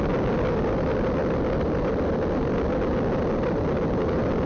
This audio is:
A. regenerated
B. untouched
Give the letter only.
B